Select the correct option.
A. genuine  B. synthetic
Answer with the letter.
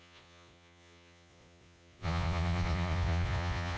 B